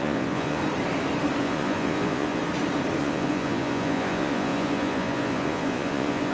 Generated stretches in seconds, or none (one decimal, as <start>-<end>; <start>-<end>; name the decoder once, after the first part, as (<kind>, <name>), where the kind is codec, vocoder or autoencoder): 0.0-0.6 (vocoder, Vocos); 1.4-2.4; 3.0-6.3